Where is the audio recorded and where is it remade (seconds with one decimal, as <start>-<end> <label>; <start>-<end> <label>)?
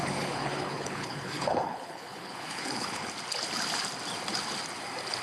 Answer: 0.0-3.1 remade; 3.1-5.2 recorded